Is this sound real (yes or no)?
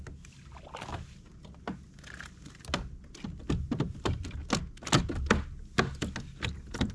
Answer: yes